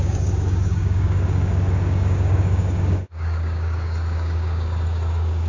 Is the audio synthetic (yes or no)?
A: yes